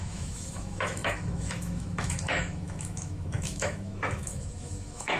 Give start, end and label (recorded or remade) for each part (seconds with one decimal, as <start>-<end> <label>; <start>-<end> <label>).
0.0-5.2 remade